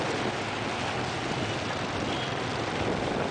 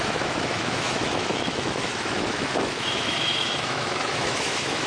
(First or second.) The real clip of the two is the first